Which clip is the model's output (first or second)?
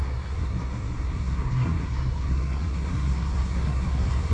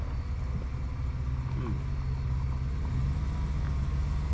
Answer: first